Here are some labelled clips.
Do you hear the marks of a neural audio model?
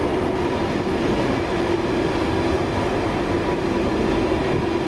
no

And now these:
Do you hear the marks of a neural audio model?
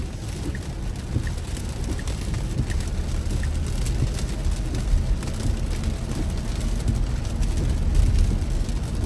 no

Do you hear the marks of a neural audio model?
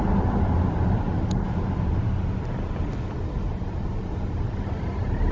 no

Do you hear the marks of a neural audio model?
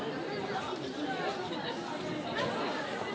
no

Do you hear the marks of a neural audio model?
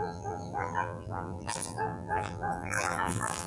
yes